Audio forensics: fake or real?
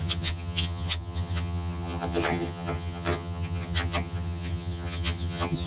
fake